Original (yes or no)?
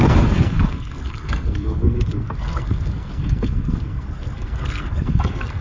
no